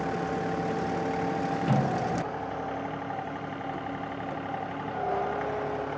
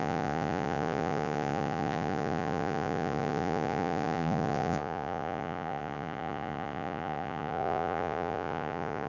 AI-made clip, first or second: second